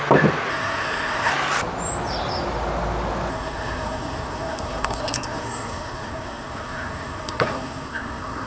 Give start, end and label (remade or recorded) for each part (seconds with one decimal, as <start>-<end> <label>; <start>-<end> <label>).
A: 0.0-0.5 recorded; 0.5-1.3 remade; 1.3-3.3 recorded; 3.3-8.5 remade